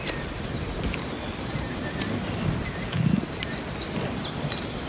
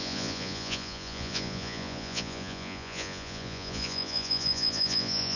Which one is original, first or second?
first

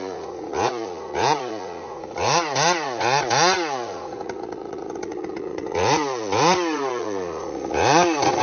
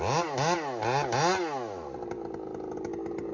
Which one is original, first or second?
second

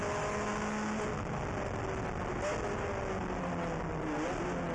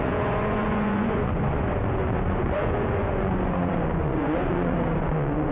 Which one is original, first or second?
first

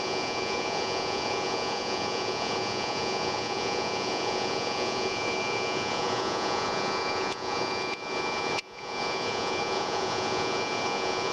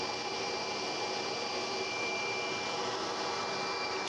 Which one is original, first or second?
second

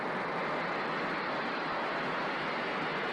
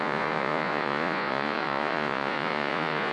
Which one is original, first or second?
first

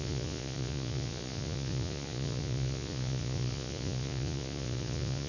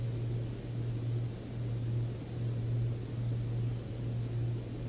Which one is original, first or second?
second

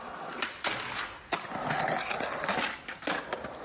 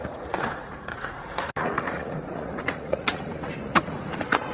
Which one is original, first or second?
first